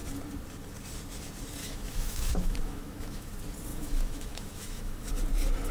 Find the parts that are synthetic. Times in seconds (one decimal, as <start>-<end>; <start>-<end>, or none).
1.6-3.3; 3.7-5.1